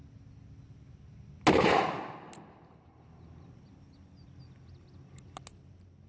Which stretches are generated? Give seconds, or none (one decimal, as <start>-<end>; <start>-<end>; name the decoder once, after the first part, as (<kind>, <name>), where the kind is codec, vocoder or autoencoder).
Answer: none